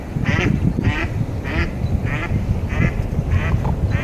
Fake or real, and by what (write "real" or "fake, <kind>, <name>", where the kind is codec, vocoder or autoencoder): real